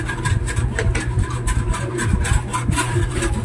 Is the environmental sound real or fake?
fake